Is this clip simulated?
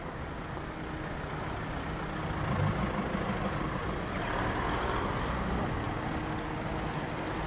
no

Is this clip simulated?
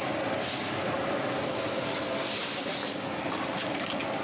no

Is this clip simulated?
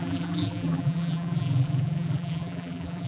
yes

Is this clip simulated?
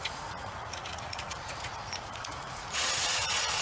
yes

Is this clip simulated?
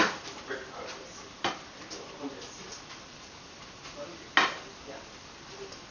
no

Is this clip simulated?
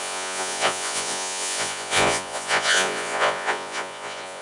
yes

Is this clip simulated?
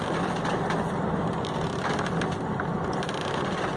no